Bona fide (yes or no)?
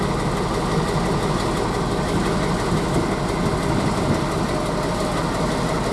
yes